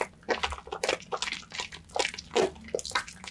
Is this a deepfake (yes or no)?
no